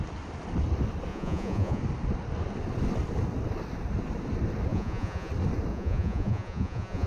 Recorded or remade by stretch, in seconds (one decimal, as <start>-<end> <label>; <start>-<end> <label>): 0.0-1.1 recorded; 1.1-1.8 remade; 1.8-4.7 recorded; 4.7-5.3 remade; 5.3-5.7 recorded; 5.7-7.1 remade